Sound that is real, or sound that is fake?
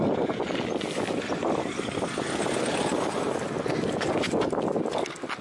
real